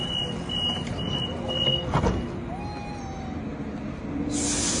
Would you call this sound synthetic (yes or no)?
no